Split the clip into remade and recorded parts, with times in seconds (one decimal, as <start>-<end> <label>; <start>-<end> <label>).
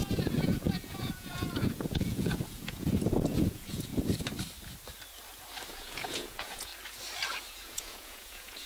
0.0-3.9 remade; 3.9-5.7 recorded; 5.7-6.7 remade; 6.7-7.5 recorded; 7.5-8.7 remade